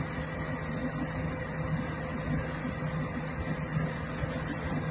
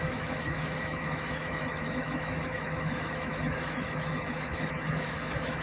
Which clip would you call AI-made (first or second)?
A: second